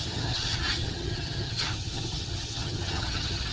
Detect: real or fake fake